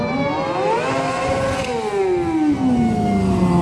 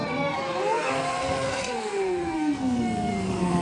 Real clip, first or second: first